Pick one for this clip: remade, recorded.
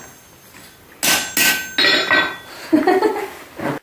recorded